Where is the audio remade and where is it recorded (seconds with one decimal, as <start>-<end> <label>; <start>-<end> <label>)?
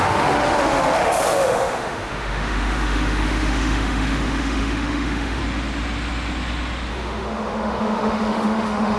0.0-5.4 remade; 5.4-6.9 recorded; 6.9-9.0 remade